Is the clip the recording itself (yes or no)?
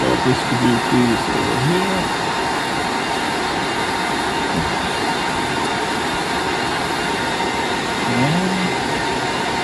yes